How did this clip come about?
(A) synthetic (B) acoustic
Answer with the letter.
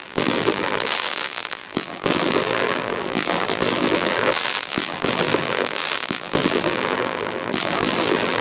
A